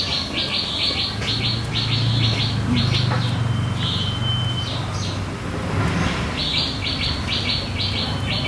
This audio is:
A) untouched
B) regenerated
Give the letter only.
A